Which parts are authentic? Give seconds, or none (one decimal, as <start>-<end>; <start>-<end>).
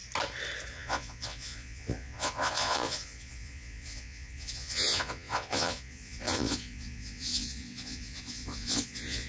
0.0-0.7